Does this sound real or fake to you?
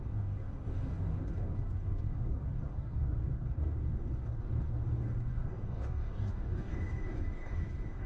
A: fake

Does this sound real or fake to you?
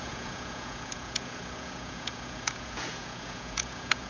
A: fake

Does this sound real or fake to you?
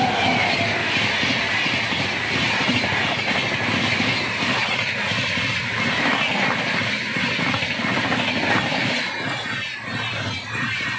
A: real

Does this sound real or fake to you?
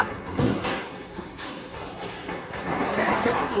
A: fake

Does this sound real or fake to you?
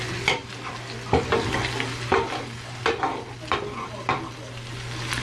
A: real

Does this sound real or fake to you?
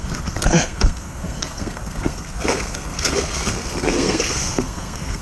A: fake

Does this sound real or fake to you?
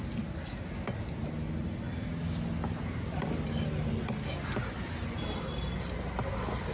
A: real